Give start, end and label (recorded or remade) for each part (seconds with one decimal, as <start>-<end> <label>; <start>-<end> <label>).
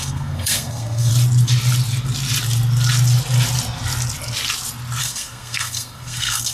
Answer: 0.0-1.1 remade; 1.1-5.0 recorded; 5.0-6.5 remade